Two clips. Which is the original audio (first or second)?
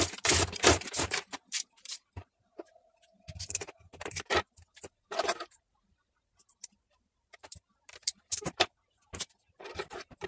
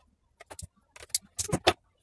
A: second